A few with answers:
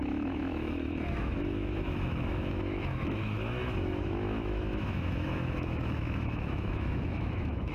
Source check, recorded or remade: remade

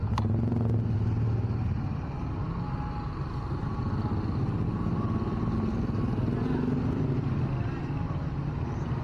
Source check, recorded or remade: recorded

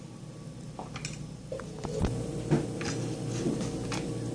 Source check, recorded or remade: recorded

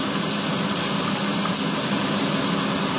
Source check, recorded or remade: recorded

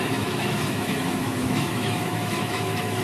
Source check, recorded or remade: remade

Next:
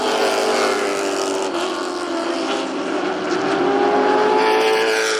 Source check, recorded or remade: recorded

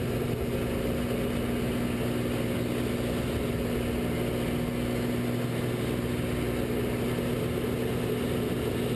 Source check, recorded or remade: recorded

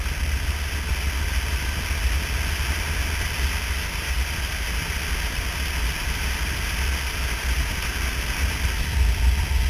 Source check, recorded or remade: recorded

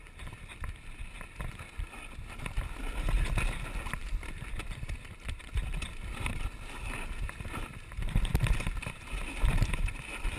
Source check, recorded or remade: recorded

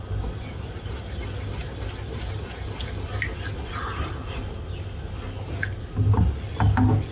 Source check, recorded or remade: recorded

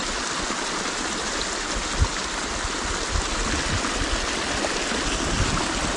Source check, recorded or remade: recorded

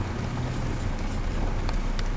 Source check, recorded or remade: recorded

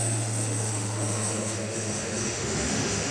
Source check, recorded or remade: remade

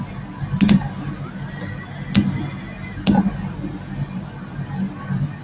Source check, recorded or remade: recorded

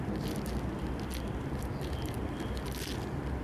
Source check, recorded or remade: recorded